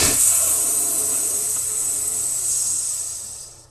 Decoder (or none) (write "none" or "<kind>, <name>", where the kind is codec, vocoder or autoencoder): vocoder, Vocos